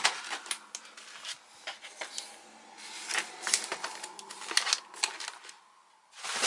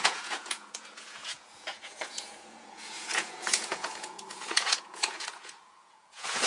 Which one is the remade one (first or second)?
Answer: second